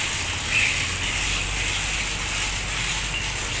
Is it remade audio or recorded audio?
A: recorded